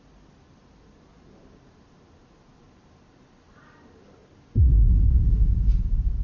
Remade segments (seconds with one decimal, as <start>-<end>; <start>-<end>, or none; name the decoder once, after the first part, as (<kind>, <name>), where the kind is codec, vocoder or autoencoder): none

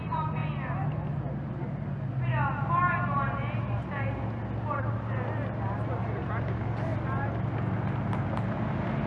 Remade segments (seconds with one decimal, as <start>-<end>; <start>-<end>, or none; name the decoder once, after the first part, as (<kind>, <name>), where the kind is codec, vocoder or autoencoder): none

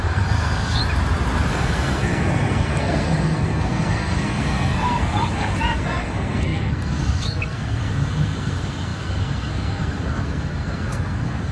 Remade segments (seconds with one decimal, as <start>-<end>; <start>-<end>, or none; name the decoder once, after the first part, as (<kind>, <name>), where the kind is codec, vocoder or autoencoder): 0.0-0.8 (codec, SNAC); 1.5-11.5